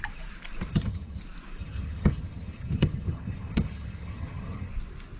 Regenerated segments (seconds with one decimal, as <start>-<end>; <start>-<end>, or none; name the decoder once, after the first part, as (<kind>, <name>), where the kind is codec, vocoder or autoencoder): 0.7-1.2 (vocoder, HiFi-GAN); 1.6-4.7